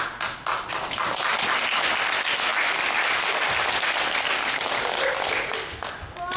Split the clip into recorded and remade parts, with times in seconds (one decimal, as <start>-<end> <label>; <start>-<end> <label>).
0.0-6.4 recorded